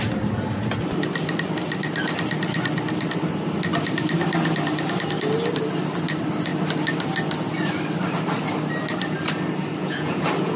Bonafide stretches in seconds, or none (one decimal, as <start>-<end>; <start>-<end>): 0.0-9.8